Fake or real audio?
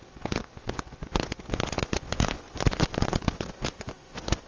fake